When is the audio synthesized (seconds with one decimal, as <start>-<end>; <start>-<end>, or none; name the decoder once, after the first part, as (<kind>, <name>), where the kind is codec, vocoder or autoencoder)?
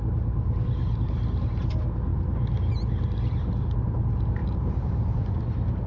2.1-2.7 (vocoder, BigVGAN v2); 4.4-5.4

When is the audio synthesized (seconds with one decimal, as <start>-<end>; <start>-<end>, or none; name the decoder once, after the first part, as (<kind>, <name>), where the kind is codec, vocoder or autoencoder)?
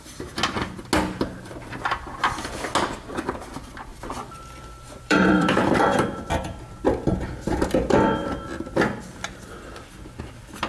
3.9-5.7 (vocoder, BigVGAN v2)